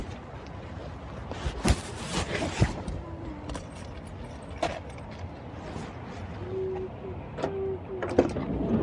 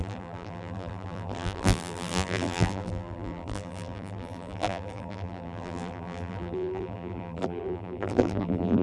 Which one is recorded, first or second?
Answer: first